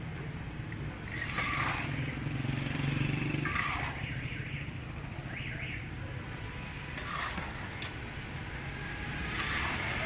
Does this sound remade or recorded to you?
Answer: recorded